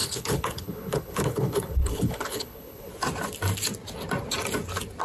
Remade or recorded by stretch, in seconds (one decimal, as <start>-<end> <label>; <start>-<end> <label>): 0.0-2.9 remade; 2.9-5.0 recorded